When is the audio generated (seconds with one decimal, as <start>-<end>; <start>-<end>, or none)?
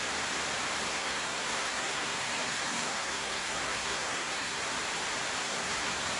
0.9-4.6; 5.4-6.2